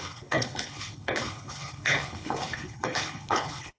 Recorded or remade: remade